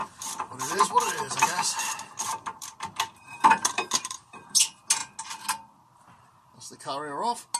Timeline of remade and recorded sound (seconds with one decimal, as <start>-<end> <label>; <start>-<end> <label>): 0.0-4.6 remade; 4.6-7.6 recorded